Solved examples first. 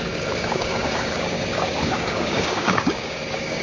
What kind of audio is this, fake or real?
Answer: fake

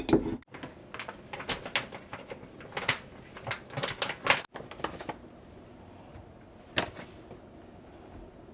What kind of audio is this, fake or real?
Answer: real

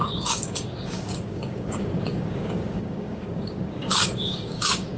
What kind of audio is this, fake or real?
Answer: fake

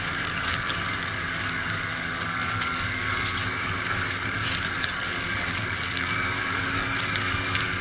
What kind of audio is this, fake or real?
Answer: fake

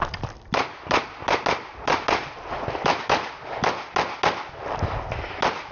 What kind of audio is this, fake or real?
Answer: real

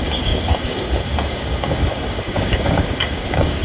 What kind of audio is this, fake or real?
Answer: fake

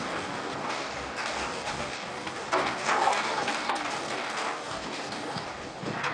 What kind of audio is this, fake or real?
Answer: fake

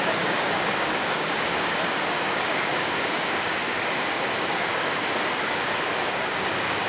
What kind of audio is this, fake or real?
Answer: fake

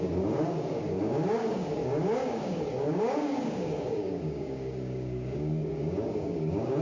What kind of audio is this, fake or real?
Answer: fake